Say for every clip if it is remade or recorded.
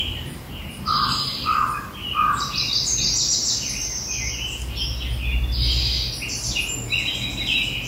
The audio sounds recorded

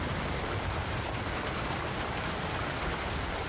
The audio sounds remade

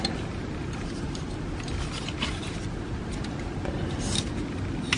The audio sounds recorded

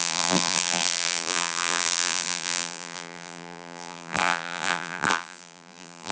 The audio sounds remade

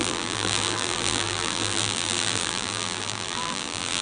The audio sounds remade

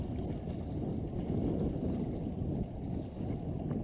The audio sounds recorded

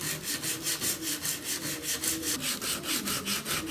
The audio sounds recorded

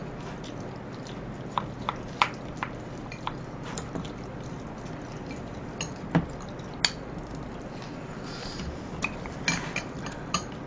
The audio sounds recorded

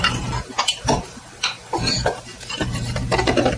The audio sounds remade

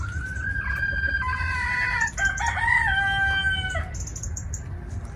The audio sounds recorded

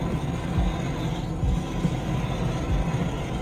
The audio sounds recorded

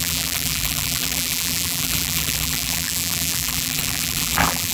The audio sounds remade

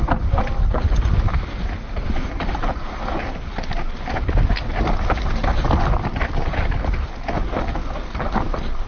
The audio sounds recorded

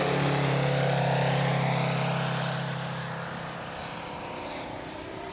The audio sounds remade